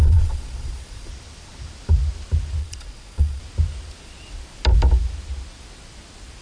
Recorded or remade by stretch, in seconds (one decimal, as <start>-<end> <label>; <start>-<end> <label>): 0.0-1.1 remade; 1.1-2.6 recorded; 2.6-3.4 remade; 3.4-6.4 recorded